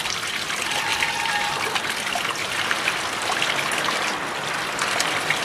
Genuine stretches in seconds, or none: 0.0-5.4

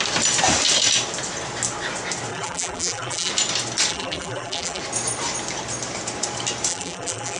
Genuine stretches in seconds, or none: 0.0-2.3; 3.3-3.9; 4.8-6.7

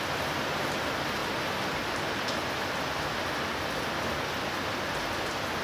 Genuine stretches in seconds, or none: 0.0-5.6

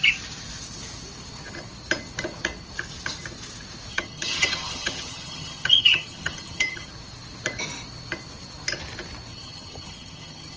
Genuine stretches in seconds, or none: 0.0-3.9; 6.9-9.3

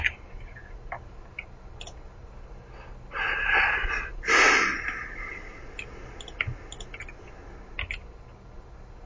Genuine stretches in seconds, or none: 0.0-9.1

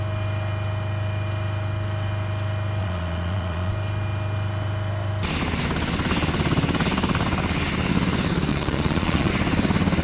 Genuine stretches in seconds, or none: 0.0-2.8; 3.7-8.5; 9.3-10.0

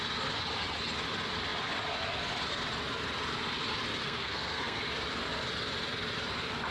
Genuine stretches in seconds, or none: 0.0-4.0; 4.8-6.7

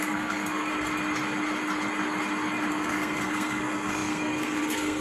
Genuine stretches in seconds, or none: 0.7-2.7